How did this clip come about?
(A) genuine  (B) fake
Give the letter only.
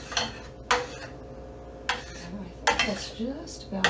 A